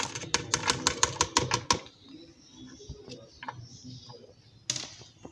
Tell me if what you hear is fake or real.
real